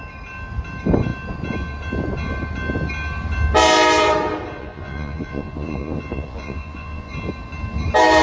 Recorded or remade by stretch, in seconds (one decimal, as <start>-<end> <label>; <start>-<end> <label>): 0.0-4.6 recorded; 4.6-7.1 remade; 7.1-8.2 recorded